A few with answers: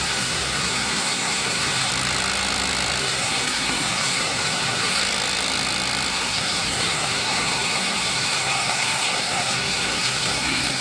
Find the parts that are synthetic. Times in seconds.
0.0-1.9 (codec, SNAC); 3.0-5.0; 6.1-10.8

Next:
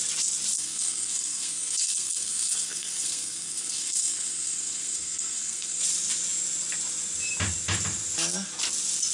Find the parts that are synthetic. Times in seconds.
0.5-5.8 (codec, SNAC)

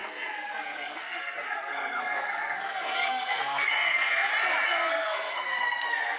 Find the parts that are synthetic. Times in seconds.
0.0-4.3 (codec, SNAC); 4.9-6.2

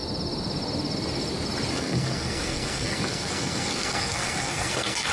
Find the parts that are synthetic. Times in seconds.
1.7-5.1 (codec, SNAC)